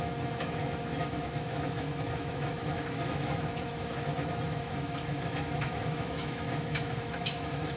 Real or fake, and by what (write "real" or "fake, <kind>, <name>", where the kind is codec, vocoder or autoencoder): fake, autoencoder, DAC-VAE